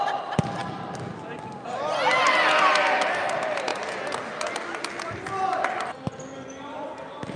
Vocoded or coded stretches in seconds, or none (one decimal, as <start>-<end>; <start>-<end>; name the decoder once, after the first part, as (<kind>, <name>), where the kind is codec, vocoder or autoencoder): none